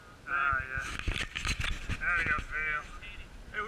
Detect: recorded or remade recorded